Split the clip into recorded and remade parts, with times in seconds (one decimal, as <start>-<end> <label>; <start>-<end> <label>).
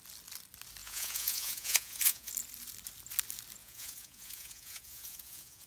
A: 0.0-0.8 recorded; 0.8-2.3 remade; 2.3-3.6 recorded; 3.6-5.7 remade